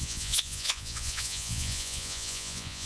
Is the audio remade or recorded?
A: remade